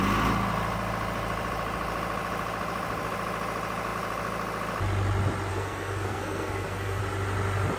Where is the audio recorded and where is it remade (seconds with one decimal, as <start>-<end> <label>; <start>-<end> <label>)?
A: 0.0-5.5 recorded; 5.5-7.0 remade; 7.0-7.8 recorded